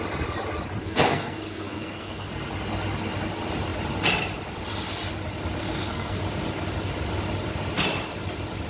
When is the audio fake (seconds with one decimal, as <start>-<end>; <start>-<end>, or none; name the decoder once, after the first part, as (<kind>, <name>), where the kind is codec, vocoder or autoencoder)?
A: 0.8-2.3 (codec, SNAC); 5.6-6.2